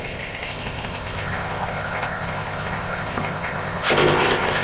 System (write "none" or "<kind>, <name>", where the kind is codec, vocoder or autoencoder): codec, ZipCodec